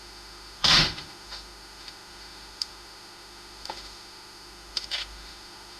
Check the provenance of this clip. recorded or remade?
remade